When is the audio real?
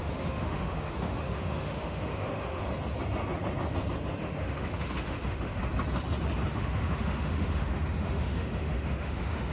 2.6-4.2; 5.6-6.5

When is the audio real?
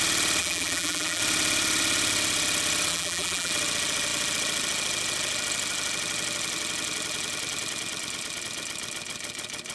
0.0-0.4; 1.2-2.9; 3.5-9.7